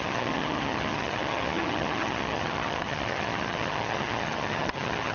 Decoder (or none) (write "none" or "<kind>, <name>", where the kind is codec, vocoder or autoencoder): vocoder, HiFi-GAN